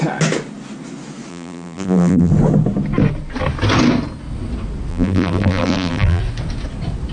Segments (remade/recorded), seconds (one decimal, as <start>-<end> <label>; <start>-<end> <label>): 0.0-1.3 recorded; 1.3-2.3 remade; 2.3-4.9 recorded; 4.9-6.2 remade; 6.2-7.1 recorded